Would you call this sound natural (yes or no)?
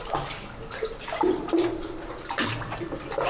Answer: yes